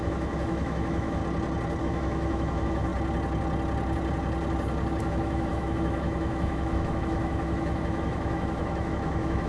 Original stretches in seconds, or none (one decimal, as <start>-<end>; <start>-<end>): 1.2-1.8; 2.9-5.0